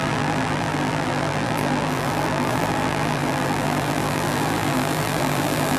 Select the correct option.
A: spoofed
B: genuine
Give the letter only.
A